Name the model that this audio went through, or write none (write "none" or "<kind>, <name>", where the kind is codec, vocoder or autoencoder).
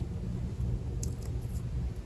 none